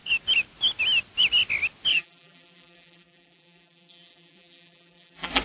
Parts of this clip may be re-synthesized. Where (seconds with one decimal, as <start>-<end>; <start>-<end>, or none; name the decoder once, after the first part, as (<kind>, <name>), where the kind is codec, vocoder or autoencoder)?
1.9-5.4 (vocoder, BigVGAN v2)